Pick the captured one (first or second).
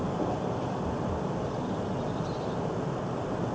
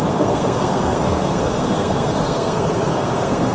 first